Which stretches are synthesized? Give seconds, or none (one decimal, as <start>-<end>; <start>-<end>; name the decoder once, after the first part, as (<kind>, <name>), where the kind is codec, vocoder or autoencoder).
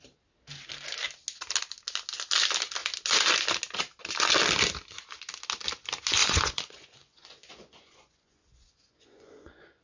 6.2-9.8 (vocoder, Vocos)